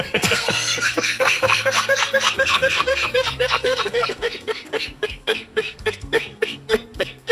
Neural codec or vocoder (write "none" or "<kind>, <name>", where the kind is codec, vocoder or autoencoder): codec, SNAC